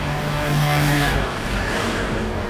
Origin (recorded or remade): remade